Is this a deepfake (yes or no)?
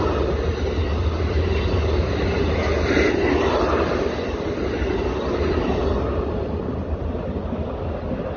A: no